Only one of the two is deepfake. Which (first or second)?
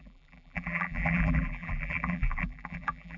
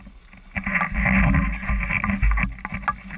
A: first